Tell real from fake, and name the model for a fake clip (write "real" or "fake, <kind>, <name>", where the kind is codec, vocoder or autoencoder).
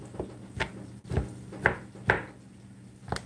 real